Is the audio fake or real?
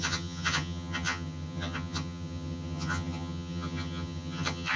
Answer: fake